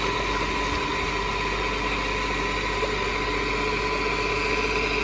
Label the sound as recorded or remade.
recorded